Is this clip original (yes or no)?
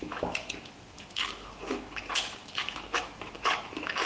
no